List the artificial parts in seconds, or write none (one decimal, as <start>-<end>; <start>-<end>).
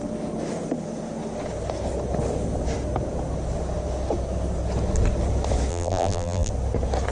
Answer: 5.7-6.5